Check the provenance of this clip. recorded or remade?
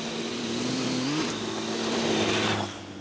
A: recorded